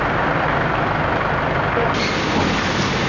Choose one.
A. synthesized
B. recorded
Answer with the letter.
B